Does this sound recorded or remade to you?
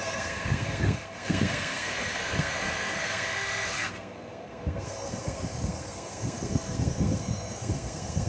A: remade